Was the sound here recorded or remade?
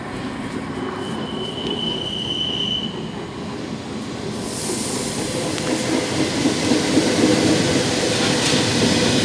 recorded